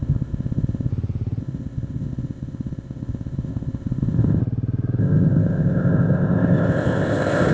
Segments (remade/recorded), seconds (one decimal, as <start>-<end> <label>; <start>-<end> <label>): 0.0-0.9 remade; 0.9-1.4 recorded; 1.4-4.4 remade; 4.4-5.0 recorded; 5.0-7.5 remade